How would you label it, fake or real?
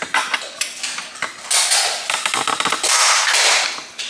real